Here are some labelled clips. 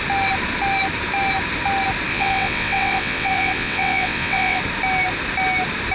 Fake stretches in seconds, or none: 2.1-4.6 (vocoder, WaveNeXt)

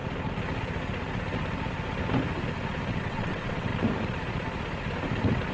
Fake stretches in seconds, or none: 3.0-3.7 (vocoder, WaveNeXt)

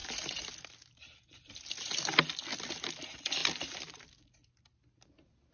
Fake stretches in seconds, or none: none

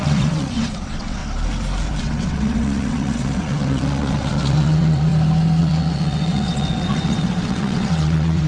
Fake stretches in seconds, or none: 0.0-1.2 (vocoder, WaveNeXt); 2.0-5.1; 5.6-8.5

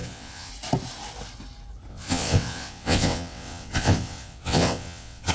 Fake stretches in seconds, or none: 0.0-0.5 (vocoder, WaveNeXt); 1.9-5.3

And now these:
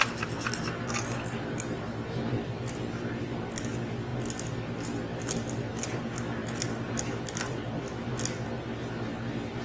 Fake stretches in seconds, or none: none

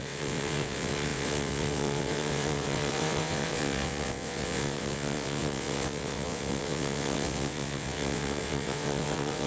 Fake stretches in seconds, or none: 0.0-9.5 (vocoder, WaveNeXt)

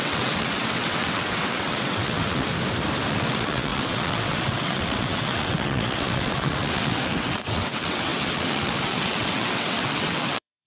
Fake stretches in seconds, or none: 0.0-2.5 (vocoder, WaveNeXt); 3.1-10.7